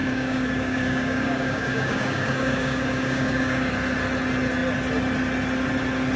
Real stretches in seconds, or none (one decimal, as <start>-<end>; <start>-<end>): 3.7-6.2